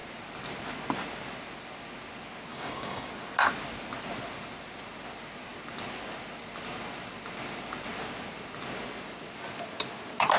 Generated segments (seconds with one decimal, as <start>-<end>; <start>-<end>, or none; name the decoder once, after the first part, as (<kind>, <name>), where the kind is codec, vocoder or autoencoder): 2.5-3.1 (codec, DAC)